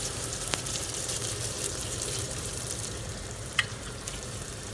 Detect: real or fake fake